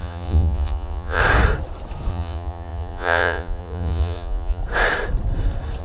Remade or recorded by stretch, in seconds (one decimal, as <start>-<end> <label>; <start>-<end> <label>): 0.0-1.2 remade; 1.2-2.1 recorded; 2.1-4.6 remade; 4.6-5.8 recorded